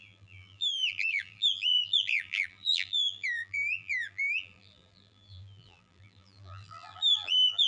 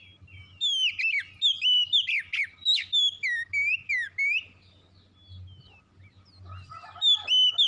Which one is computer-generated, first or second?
first